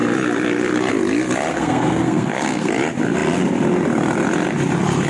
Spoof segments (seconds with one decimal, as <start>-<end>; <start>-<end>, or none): 1.5-2.7